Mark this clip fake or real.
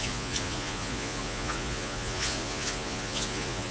fake